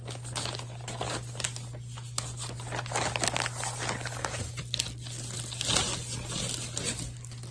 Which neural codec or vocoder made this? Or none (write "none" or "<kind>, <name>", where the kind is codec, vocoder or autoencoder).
none